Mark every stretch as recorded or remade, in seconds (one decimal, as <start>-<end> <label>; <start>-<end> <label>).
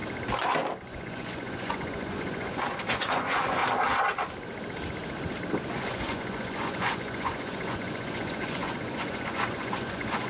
0.0-0.8 recorded; 0.8-3.6 remade; 3.6-5.7 recorded; 5.7-10.3 remade